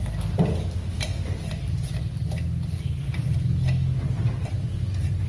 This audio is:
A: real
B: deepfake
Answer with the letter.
A